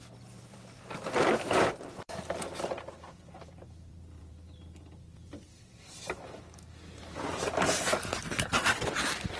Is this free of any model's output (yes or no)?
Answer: no